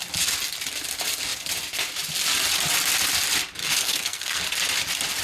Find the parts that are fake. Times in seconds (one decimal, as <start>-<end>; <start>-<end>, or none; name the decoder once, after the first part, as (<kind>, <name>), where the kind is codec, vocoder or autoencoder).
3.6-4.4 (codec, SNAC)